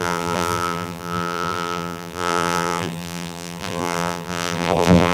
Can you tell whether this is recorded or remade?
remade